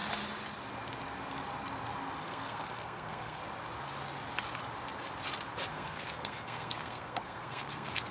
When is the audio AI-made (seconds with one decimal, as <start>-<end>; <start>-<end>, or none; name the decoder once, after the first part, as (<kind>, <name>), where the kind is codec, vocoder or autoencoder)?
2.2-3.4 (codec, SNAC); 5.7-8.1